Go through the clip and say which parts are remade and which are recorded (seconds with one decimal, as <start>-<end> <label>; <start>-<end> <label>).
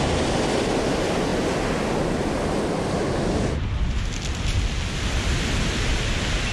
0.0-6.5 recorded